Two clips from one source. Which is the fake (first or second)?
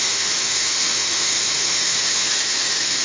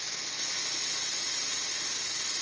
first